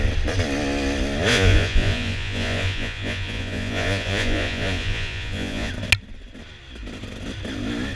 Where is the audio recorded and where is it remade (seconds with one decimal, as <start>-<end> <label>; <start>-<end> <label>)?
0.0-1.3 recorded; 1.3-5.7 remade; 5.7-8.0 recorded

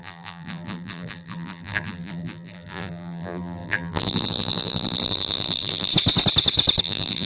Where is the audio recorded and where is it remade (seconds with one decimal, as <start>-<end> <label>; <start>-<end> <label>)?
0.0-5.9 remade; 5.9-6.8 recorded; 6.8-7.3 remade

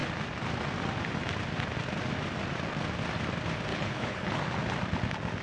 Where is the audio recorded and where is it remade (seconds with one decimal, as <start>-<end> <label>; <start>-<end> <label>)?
0.0-3.7 recorded; 3.7-4.4 remade; 4.4-5.4 recorded

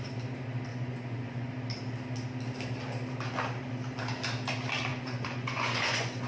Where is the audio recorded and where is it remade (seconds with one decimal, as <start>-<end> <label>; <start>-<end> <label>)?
0.0-0.7 recorded; 0.7-1.5 remade; 1.5-4.9 recorded; 4.9-6.3 remade

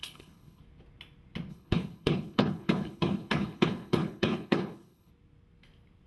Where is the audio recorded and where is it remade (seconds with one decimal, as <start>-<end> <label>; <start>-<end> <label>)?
0.0-0.6 remade; 0.6-1.5 recorded; 1.5-5.1 remade; 5.1-6.1 recorded

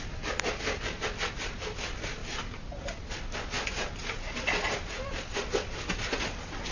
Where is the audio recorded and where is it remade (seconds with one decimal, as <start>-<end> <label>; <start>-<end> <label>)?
0.0-6.7 recorded

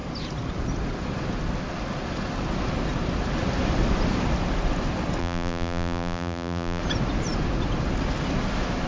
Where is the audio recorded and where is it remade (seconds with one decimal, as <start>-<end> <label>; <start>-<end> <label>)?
0.0-5.2 recorded; 5.2-6.8 remade; 6.8-8.9 recorded